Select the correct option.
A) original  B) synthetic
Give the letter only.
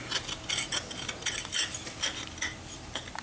A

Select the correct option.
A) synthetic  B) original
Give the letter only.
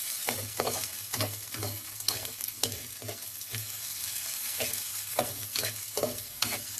A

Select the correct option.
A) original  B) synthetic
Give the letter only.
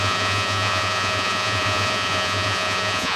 B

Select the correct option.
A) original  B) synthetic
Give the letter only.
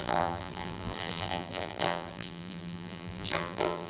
B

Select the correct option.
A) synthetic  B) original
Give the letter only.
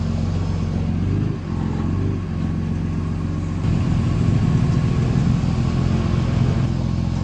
B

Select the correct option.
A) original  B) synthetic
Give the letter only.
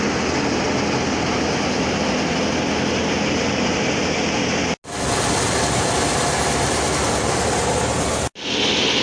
A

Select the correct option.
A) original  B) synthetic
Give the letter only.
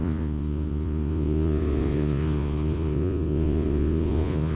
B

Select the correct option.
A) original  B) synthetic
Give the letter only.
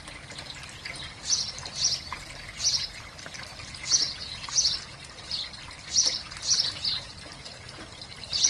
A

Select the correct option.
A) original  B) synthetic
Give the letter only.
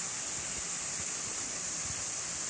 B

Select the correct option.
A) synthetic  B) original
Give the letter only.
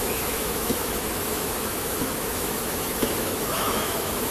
A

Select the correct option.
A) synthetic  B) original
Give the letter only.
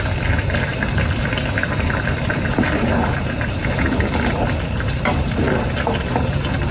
B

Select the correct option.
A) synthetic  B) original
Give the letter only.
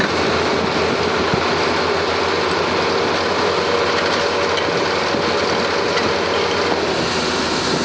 B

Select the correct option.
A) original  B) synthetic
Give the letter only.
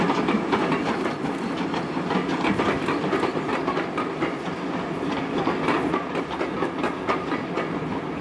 A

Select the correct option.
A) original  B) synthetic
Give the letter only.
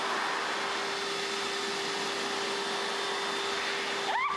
A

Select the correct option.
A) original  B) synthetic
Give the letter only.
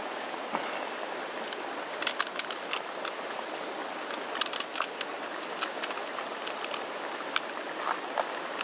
A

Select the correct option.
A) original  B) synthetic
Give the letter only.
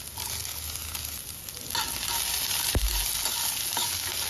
A